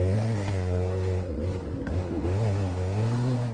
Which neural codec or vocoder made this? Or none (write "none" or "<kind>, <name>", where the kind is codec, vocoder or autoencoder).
codec, SNAC